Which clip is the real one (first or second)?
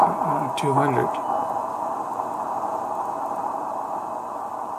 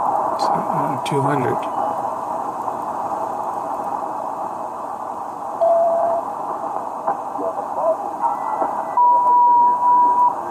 first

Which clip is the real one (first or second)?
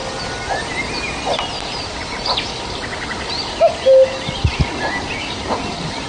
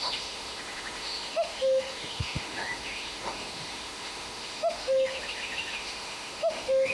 first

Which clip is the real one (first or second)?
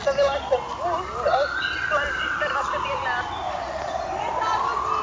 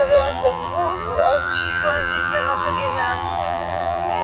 first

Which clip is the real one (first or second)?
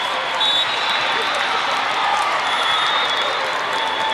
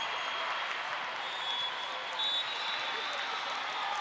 second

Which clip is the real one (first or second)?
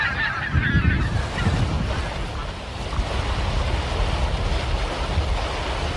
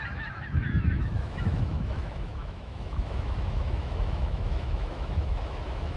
first